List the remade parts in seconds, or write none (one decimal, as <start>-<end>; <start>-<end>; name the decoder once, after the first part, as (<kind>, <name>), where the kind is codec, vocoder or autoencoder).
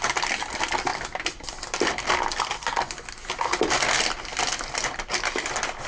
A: none